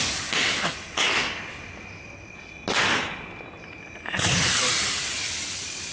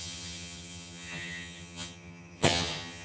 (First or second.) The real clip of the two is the first